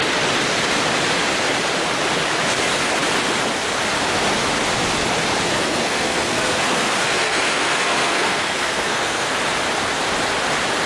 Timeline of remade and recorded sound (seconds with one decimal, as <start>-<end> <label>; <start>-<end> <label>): 0.0-5.5 recorded; 5.5-9.3 remade; 9.3-10.9 recorded